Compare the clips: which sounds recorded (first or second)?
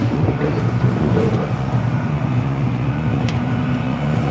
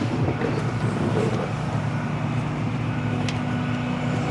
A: second